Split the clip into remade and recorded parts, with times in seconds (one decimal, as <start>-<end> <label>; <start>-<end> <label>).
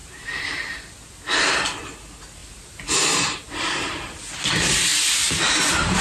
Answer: 0.0-0.7 remade; 0.7-2.4 recorded; 2.4-4.2 remade; 4.2-6.0 recorded